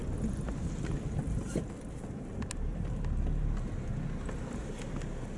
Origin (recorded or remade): recorded